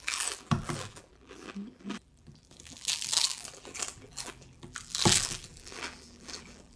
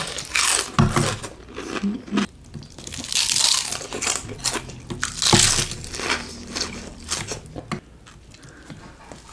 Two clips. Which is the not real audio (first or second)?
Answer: first